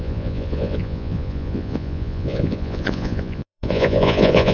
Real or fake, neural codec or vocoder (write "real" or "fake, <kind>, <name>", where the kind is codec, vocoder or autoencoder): fake, vocoder, Vocos